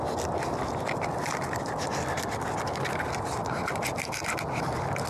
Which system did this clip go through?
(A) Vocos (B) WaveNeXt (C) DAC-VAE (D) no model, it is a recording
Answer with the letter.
D